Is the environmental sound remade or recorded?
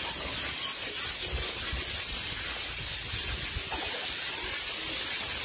recorded